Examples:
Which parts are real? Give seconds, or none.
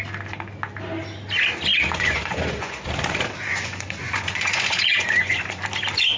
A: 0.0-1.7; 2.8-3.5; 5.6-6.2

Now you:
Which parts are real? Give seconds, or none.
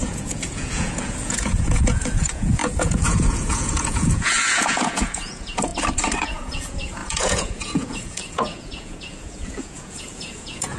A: 5.7-6.2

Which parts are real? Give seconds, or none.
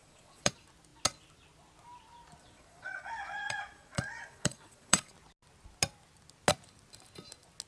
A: 0.5-2.4; 5.1-7.7